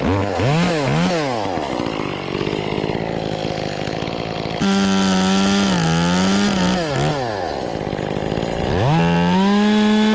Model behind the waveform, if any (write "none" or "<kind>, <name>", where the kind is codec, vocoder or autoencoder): none